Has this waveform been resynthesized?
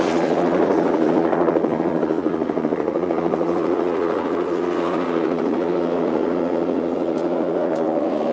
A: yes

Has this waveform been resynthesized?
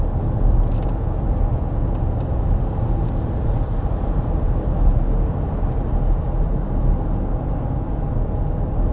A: no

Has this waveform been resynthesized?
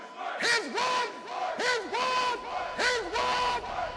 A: no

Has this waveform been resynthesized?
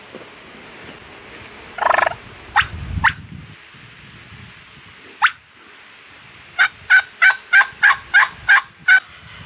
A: no